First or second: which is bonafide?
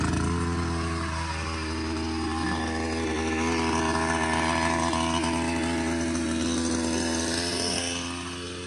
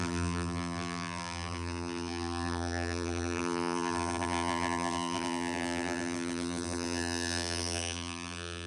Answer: first